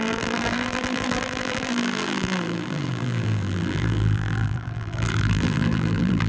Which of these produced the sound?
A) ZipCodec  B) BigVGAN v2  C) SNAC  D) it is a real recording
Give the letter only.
B